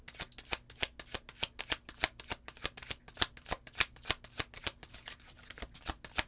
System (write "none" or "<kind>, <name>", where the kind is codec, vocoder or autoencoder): none